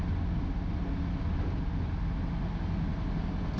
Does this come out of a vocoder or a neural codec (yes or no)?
no